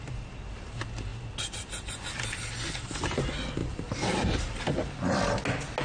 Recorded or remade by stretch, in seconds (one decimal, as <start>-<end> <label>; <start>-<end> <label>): 0.0-5.8 recorded